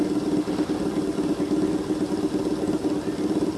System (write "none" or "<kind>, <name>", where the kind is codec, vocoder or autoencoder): none